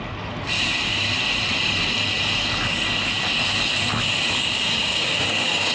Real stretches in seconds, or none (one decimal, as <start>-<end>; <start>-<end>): 0.0-4.4